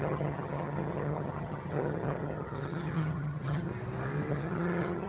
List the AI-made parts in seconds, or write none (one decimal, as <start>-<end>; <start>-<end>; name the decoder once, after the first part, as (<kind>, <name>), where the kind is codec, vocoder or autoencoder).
0.0-3.7 (vocoder, HiFi-GAN); 4.3-5.1